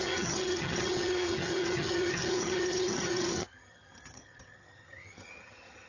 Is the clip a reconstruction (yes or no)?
yes